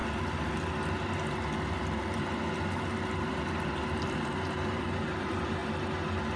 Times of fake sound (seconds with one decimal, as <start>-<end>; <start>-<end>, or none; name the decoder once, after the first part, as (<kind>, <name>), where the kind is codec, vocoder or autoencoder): 3.8-5.6 (vocoder, BigVGAN v2)